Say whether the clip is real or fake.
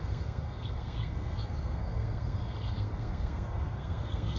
fake